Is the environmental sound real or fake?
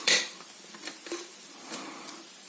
fake